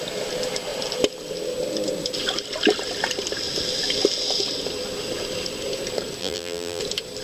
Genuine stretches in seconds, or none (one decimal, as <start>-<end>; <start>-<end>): 0.0-6.2; 6.8-7.2